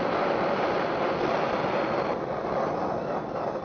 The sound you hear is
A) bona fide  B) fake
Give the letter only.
A